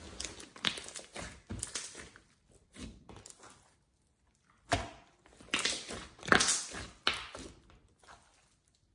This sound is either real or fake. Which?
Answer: real